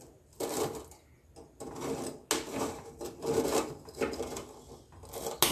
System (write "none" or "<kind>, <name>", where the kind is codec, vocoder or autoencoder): none